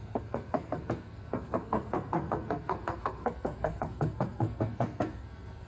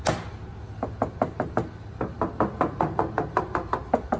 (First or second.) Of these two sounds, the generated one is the first